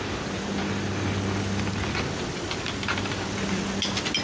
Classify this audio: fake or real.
real